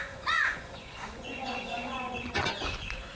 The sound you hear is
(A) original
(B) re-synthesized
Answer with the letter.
B